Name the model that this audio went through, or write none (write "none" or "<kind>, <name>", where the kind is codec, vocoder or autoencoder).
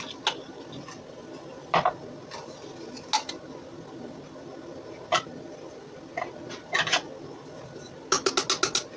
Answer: none